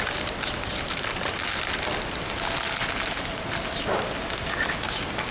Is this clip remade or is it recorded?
recorded